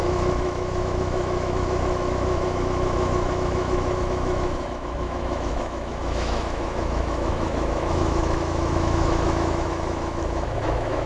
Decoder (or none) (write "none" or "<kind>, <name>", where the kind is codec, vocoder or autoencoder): autoencoder, DAC-VAE